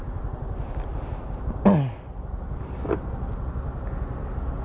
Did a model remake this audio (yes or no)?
no